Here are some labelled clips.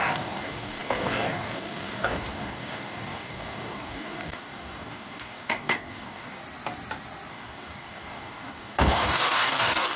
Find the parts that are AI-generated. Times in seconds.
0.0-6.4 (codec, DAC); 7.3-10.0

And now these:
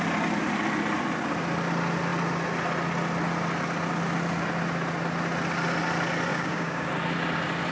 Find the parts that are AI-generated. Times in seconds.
6.3-6.9 (codec, DAC)

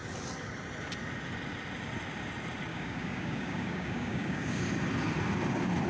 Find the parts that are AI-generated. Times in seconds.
2.7-4.6 (codec, DAC)

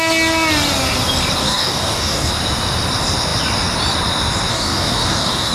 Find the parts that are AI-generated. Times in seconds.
1.4-2.3 (codec, DAC); 4.5-5.5

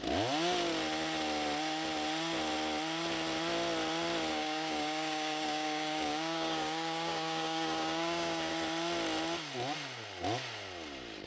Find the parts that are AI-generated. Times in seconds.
4.3-8.5 (codec, DAC)

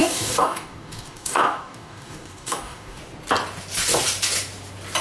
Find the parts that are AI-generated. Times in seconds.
0.0-3.0 (codec, DAC)

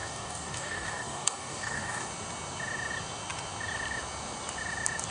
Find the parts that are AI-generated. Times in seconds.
0.0-2.1 (codec, DAC)